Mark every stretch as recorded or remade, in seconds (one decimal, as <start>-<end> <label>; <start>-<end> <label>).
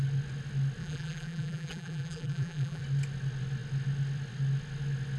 0.0-0.8 recorded; 0.8-2.8 remade; 2.8-5.2 recorded